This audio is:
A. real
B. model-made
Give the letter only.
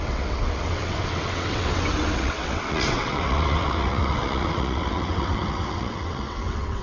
B